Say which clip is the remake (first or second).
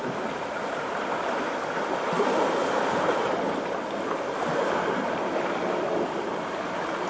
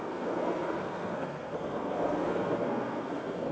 second